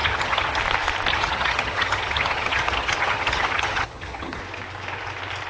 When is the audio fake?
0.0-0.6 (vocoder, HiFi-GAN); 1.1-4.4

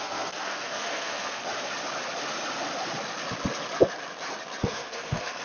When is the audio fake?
0.0-1.4 (codec, SNAC); 4.6-5.4